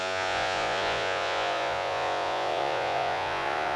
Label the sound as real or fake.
fake